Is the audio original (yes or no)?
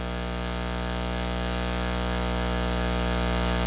yes